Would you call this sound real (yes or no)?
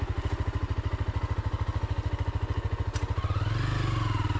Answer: yes